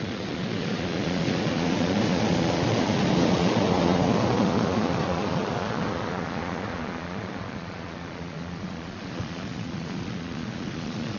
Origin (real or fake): fake